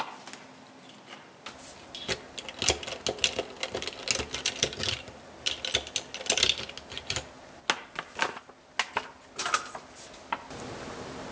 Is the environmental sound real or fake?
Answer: real